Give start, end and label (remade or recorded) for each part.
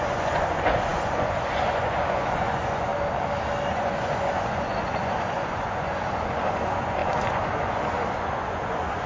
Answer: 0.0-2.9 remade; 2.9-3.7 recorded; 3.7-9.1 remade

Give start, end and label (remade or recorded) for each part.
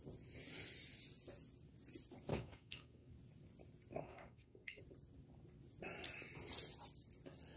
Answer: 0.0-2.3 recorded; 2.3-3.1 remade; 3.1-4.0 recorded; 4.0-4.8 remade; 4.8-7.6 recorded